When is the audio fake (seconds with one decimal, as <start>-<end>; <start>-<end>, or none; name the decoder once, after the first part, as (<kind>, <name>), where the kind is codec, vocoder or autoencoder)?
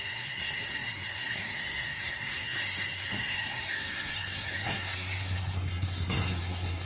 0.0-6.8 (codec, SNAC)